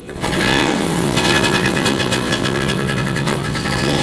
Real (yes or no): no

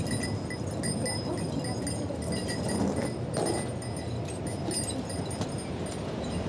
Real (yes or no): yes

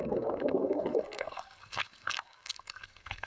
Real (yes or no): no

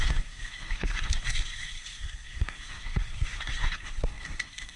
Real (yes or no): no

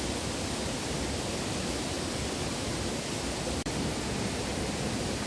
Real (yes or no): no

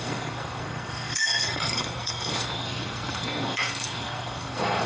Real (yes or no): no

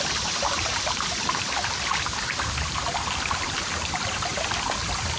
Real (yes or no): yes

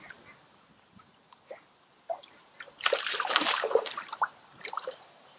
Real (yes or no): no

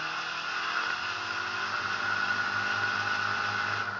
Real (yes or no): yes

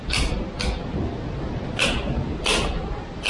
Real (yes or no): yes